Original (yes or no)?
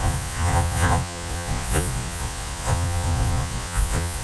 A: no